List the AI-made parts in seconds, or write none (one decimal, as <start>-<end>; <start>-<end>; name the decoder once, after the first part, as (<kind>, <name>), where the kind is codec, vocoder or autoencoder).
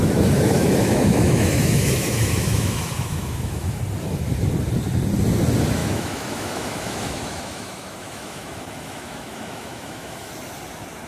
0.0-3.8 (autoencoder, DAC-VAE); 5.8-10.3